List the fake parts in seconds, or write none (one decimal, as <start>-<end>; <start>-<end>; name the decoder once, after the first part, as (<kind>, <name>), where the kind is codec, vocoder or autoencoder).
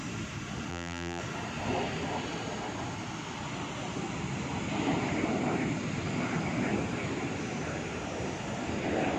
0.7-1.2 (vocoder, BigVGAN v2)